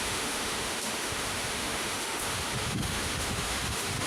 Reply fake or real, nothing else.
fake